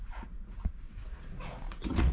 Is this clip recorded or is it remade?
remade